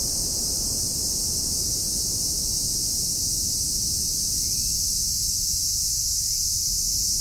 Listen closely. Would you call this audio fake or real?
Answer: real